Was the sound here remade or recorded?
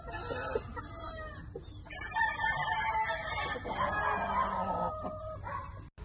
recorded